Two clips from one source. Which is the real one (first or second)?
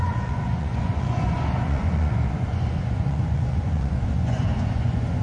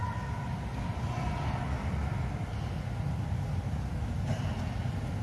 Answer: second